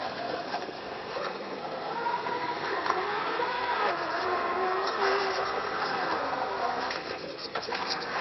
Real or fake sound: fake